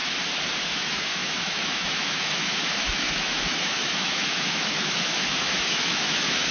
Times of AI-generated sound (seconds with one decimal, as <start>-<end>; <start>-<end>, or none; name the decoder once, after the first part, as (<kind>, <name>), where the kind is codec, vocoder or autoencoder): 0.6-6.5 (autoencoder, DAC-VAE)